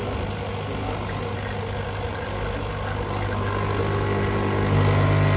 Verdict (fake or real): real